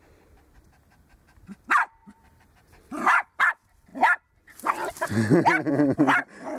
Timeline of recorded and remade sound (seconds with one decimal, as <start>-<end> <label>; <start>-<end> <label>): 0.0-2.0 recorded; 2.0-3.4 remade; 3.4-6.6 recorded